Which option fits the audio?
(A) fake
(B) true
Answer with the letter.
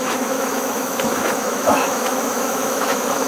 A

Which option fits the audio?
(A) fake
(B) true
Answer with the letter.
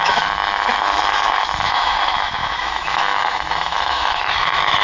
A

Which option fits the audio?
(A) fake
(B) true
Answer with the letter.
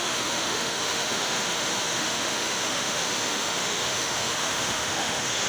A